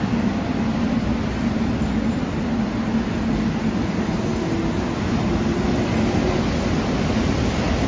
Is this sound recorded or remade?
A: recorded